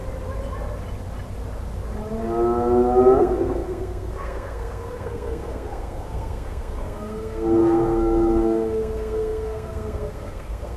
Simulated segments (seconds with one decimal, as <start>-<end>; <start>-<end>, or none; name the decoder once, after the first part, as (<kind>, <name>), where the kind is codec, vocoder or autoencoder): 3.2-10.8 (codec, SNAC)